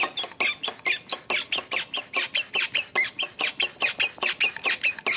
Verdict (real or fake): real